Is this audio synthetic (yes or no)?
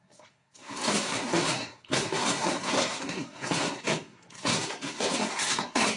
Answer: yes